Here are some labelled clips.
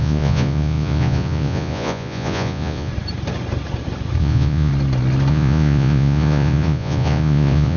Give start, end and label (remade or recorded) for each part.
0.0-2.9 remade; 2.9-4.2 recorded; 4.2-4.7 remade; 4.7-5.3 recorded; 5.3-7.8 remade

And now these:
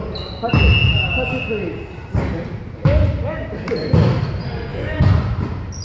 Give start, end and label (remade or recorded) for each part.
0.0-4.7 recorded; 4.7-5.3 remade; 5.3-5.8 recorded

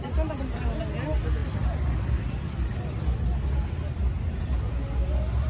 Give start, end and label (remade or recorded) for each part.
0.0-5.5 recorded